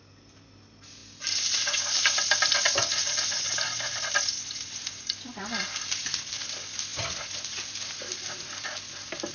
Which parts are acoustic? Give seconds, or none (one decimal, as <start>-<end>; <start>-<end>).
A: 0.0-9.3